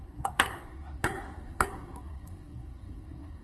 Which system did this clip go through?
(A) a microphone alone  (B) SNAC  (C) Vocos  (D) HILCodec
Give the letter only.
B